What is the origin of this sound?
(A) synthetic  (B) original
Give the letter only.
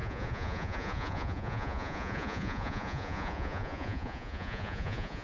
A